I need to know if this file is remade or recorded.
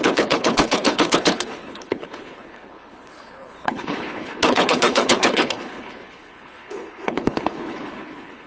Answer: remade